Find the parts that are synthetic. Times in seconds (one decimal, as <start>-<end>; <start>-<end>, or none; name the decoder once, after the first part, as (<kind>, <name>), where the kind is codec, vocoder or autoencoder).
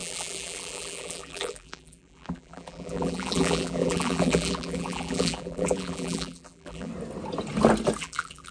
0.0-6.9 (vocoder, BigVGAN v2); 8.0-8.5